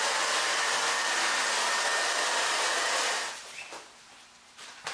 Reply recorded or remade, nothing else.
recorded